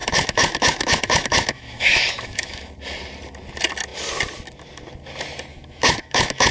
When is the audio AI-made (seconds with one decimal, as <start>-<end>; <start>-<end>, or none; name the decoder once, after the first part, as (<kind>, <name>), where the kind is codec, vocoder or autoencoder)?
0.0-2.7 (autoencoder, DAC-VAE); 5.5-6.5